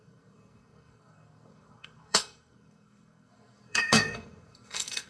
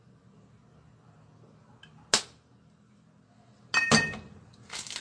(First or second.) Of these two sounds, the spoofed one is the first